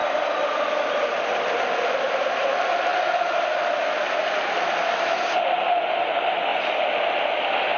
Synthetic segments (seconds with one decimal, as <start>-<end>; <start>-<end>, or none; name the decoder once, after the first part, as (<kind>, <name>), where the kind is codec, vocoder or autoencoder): 0.0-0.6 (vocoder, BigVGAN v2)